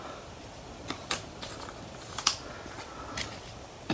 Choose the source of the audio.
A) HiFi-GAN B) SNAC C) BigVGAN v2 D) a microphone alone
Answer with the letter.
C